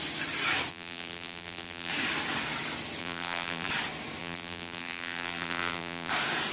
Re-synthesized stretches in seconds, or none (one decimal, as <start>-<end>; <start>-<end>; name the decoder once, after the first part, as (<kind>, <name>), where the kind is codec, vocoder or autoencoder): 0.7-1.9 (vocoder, BigVGAN v2); 3.0-3.7; 4.2-6.1